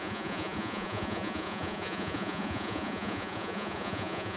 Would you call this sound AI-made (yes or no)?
yes